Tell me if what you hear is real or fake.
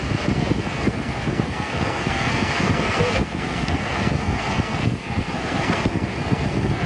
fake